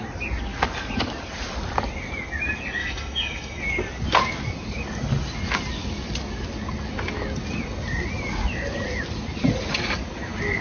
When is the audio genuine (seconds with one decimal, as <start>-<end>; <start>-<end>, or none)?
0.0-2.8; 3.6-10.6